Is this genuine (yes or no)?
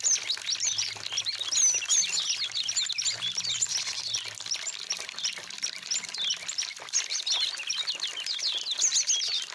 yes